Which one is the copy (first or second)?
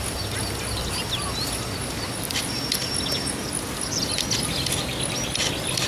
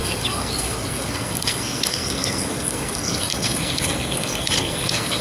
second